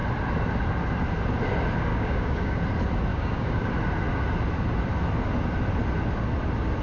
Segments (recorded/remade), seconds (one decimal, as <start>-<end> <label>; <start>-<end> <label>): 0.0-1.9 recorded; 1.9-2.6 remade; 2.6-3.1 recorded; 3.1-3.7 remade; 3.7-6.8 recorded